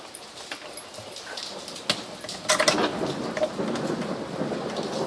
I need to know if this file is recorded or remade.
recorded